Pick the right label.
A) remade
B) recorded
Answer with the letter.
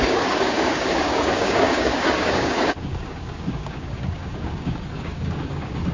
A